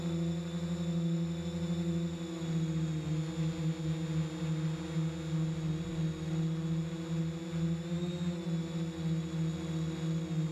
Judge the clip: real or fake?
real